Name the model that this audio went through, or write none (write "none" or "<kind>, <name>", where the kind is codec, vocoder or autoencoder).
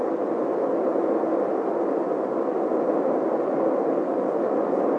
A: none